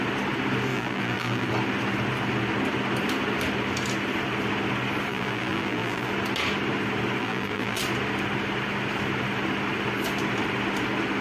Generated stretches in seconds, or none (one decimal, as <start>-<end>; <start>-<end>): 0.7-1.5; 5.1-6.1; 7.2-7.8